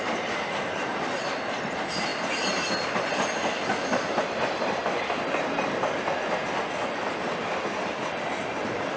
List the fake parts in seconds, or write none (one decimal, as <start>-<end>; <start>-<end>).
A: none